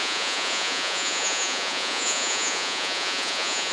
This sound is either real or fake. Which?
fake